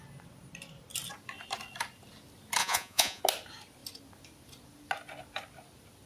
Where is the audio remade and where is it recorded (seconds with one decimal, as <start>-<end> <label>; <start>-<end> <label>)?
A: 0.0-2.6 recorded; 2.6-3.2 remade; 3.2-6.1 recorded